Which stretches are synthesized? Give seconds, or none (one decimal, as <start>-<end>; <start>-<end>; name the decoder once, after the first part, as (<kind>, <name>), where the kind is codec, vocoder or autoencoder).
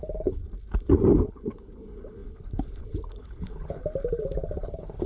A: 0.0-0.4 (codec, HILCodec); 1.1-3.8; 4.6-5.1